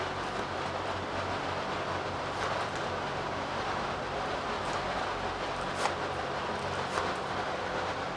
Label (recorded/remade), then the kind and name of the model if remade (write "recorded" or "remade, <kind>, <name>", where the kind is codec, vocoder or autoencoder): recorded